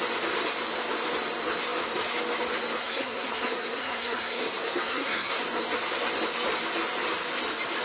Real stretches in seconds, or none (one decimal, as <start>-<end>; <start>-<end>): 0.0-2.8; 5.4-7.8